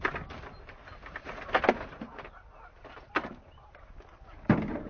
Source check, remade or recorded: recorded